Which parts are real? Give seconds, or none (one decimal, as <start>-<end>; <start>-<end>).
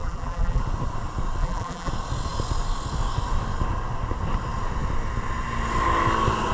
0.6-1.4; 1.9-6.5